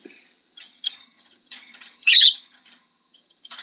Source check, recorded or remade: remade